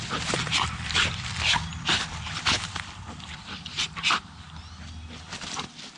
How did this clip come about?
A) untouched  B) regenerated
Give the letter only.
B